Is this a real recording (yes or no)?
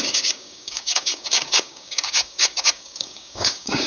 no